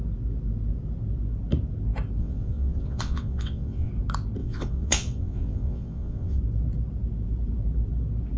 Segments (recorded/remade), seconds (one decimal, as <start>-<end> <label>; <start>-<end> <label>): 0.0-2.2 recorded; 2.2-3.9 remade; 3.9-4.4 recorded; 4.4-6.4 remade; 6.4-8.4 recorded